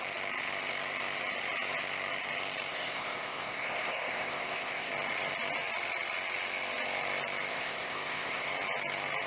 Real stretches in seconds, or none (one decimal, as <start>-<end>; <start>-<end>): 0.0-2.7; 4.9-7.5; 8.5-9.3